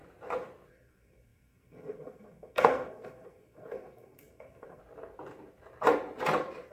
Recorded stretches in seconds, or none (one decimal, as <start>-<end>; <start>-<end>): 0.0-0.7; 4.8-6.7